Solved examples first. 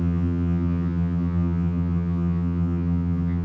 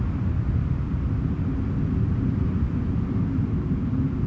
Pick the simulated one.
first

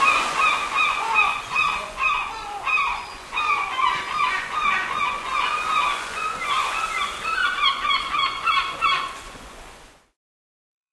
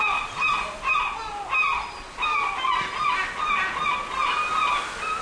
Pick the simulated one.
first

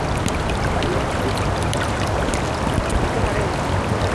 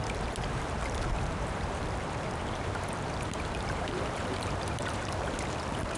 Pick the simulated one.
second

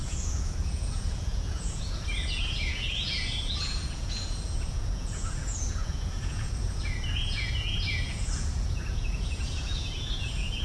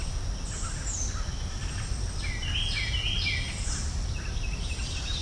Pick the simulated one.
first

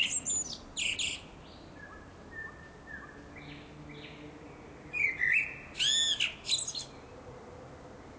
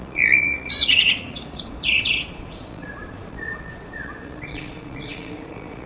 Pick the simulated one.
second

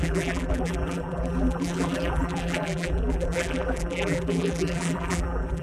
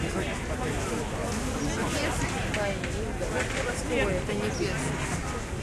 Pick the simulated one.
first